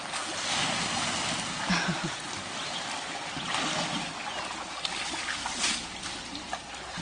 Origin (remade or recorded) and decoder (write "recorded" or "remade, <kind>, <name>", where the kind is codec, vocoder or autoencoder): recorded